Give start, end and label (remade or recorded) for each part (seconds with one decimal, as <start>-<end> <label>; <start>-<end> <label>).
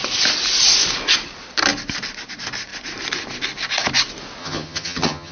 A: 0.0-4.4 recorded; 4.4-5.3 remade